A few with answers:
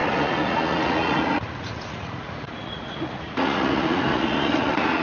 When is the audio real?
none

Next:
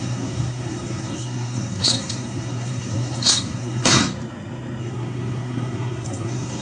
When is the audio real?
4.0-4.8

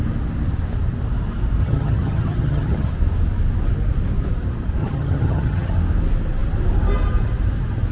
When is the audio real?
0.0-1.6; 2.9-4.8; 5.7-7.9

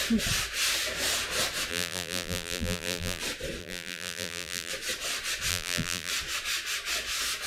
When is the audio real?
0.0-1.7; 3.2-3.6; 4.7-5.5; 6.1-7.5

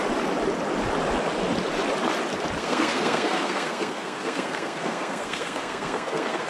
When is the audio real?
0.0-2.6

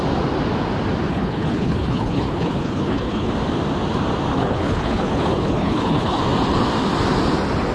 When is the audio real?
0.0-1.1; 3.3-4.3; 6.2-7.7

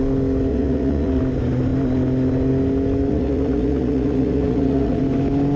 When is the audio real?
0.0-0.5; 1.2-3.1; 5.0-5.6

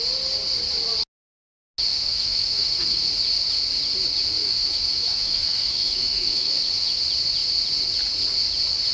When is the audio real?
0.0-1.9; 3.1-4.4; 7.0-8.9